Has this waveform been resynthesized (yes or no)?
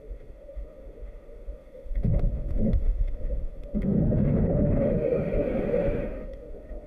yes